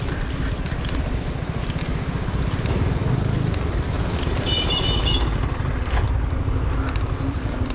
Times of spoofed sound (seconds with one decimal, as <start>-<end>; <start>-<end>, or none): 0.0-3.0; 4.3-7.7